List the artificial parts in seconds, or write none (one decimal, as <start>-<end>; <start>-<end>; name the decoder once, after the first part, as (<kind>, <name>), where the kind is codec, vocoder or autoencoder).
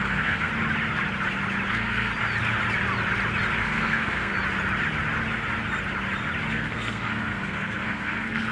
0.0-0.5 (codec, SNAC); 1.7-2.1; 3.6-4.3; 6.5-8.5